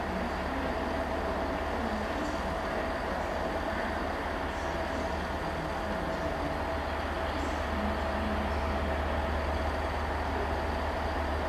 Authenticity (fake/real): real